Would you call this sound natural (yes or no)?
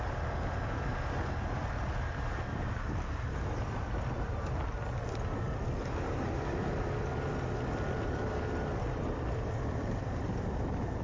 yes